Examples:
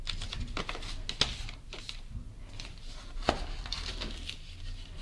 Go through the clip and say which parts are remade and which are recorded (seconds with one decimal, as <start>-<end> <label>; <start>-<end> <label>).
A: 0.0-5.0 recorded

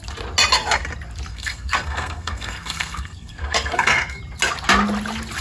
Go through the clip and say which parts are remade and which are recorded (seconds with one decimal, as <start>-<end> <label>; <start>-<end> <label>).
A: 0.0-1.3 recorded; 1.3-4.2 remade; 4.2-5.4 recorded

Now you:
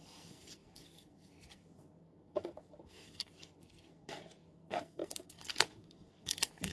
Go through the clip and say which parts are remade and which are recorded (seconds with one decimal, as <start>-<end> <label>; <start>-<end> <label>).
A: 0.0-6.7 remade

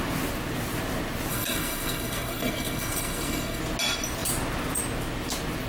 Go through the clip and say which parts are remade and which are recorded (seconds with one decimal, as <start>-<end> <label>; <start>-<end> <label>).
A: 0.0-1.3 recorded; 1.3-3.6 remade; 3.6-5.7 recorded

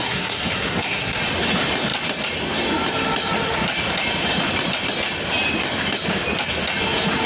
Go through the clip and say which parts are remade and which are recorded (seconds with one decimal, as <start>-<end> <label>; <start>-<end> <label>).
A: 0.0-1.2 remade; 1.2-7.3 recorded